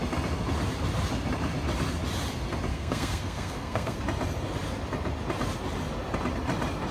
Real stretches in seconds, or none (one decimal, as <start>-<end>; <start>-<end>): 0.0-2.7; 4.0-6.9